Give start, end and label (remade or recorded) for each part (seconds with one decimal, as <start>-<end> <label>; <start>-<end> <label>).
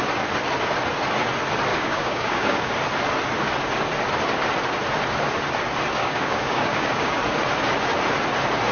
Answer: 0.0-1.7 recorded; 1.7-2.7 remade; 2.7-6.0 recorded; 6.0-7.2 remade; 7.2-8.7 recorded